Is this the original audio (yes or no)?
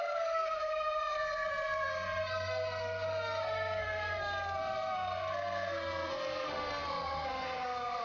no